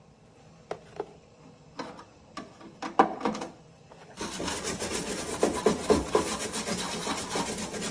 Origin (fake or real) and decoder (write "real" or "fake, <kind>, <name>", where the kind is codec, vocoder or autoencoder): real